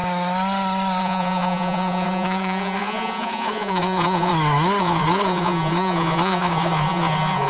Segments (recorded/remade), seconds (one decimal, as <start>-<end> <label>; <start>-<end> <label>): 0.0-1.0 recorded; 1.0-4.3 remade; 4.3-4.8 recorded; 4.8-7.5 remade